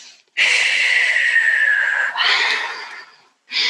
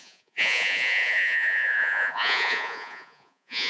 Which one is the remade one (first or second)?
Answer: second